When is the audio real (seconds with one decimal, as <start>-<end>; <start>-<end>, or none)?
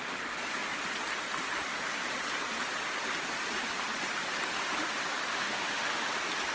0.0-5.3; 6.1-6.5